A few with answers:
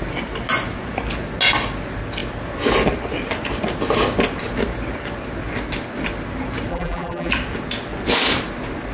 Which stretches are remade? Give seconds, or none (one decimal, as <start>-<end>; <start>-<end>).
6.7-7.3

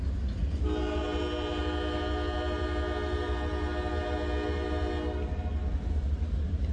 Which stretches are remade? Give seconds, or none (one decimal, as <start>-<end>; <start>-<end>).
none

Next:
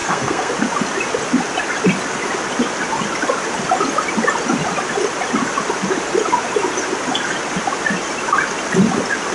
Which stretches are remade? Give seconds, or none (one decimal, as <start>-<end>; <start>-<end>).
0.0-0.5

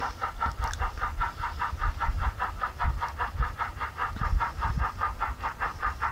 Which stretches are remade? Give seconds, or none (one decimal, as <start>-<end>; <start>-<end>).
4.0-6.1

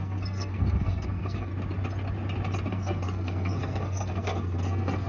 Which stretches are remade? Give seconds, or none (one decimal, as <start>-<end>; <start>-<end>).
0.0-1.5; 2.7-5.1

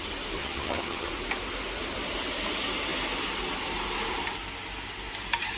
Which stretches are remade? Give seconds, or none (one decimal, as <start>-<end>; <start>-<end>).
0.4-1.1

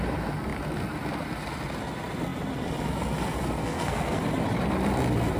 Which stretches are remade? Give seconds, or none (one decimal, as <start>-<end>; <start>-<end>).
3.6-4.2